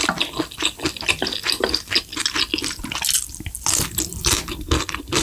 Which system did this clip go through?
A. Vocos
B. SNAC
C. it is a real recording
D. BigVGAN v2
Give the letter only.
C